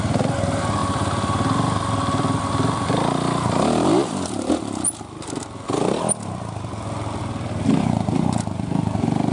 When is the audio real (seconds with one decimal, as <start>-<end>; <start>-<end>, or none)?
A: 0.0-0.8; 4.5-9.3